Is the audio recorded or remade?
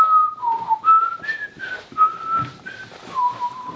recorded